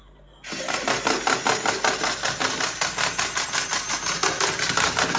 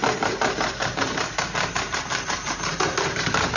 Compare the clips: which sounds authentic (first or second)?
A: first